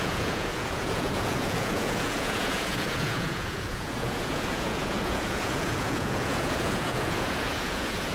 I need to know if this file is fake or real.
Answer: fake